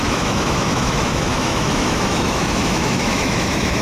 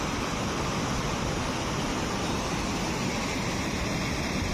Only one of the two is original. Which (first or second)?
second